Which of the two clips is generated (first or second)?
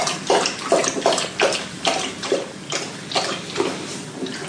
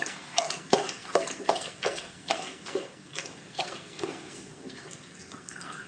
second